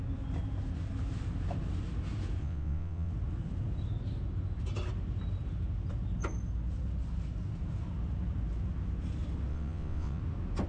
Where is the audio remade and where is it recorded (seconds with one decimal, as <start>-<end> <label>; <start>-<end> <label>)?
0.0-2.4 recorded; 2.4-3.1 remade; 3.1-9.5 recorded; 9.5-10.2 remade; 10.2-10.7 recorded